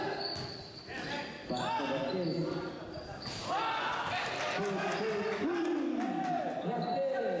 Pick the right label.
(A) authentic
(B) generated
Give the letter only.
A